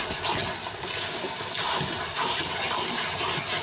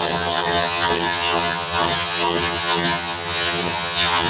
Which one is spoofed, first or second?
second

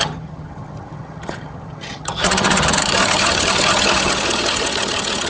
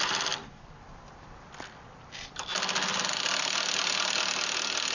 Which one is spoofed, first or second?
first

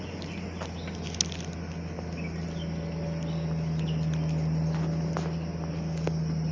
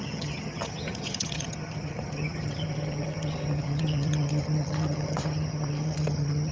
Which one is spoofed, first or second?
second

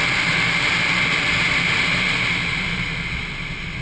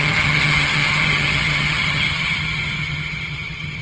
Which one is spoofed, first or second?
second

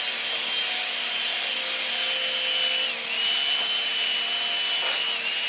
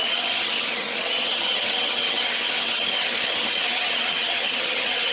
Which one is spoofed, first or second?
second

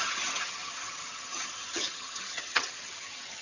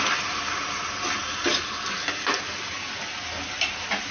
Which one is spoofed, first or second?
first